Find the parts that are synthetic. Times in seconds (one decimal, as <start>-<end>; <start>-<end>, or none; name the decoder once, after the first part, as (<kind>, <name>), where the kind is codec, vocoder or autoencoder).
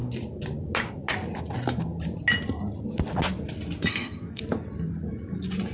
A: 3.9-4.4 (codec, SNAC)